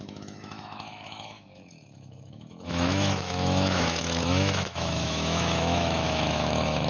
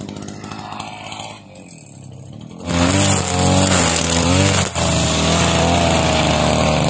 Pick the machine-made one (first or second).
first